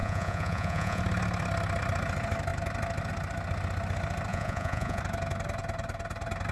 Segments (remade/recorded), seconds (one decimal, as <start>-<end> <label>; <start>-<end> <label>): 0.0-1.0 remade; 1.0-4.3 recorded; 4.3-5.0 remade; 5.0-6.5 recorded